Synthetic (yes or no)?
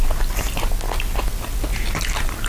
no